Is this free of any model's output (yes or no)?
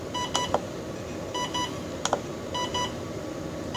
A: yes